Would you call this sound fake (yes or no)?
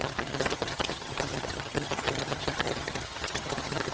yes